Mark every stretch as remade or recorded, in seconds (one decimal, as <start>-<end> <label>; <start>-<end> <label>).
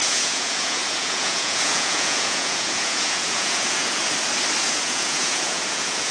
0.0-4.0 remade; 4.0-4.7 recorded; 4.7-6.1 remade